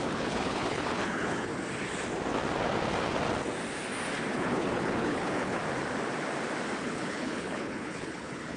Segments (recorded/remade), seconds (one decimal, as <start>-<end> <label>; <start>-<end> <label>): 0.0-1.5 remade; 1.5-4.3 recorded; 4.3-5.6 remade; 5.6-6.8 recorded; 6.8-8.6 remade